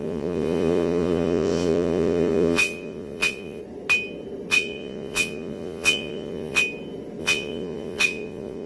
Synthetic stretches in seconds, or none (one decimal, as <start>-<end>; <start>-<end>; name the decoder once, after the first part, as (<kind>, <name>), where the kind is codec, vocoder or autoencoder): 0.0-3.6 (vocoder, Vocos); 4.5-6.6; 7.2-8.7